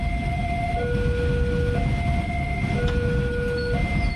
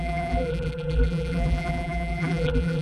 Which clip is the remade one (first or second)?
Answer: second